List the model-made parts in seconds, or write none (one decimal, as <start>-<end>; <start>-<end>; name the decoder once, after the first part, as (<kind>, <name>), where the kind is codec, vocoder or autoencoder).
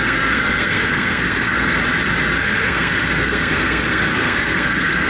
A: 0.0-1.8 (codec, SNAC); 2.4-5.1